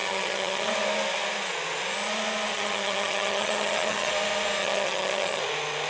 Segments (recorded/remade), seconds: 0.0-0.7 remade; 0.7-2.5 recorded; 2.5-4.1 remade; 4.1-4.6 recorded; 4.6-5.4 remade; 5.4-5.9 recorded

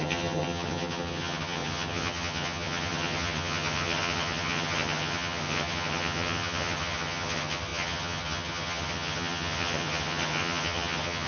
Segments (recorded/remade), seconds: 0.0-11.3 remade

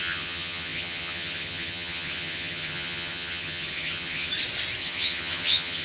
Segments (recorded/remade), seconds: 0.0-4.3 remade; 4.3-4.8 recorded; 4.8-5.8 remade

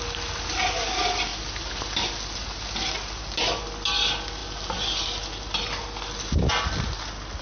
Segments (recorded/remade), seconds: 0.0-7.4 recorded

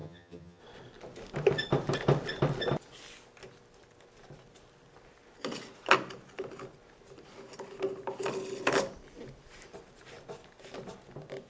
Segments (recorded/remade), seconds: 0.0-0.6 remade; 0.6-11.5 recorded

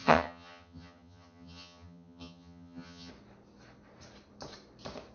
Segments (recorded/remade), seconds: 0.0-3.1 remade; 3.1-5.1 recorded